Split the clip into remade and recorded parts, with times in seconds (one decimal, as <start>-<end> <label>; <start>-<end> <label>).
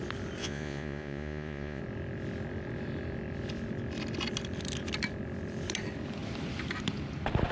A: 0.0-0.4 recorded; 0.4-1.8 remade; 1.8-7.5 recorded